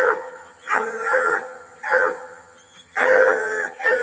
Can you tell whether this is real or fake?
fake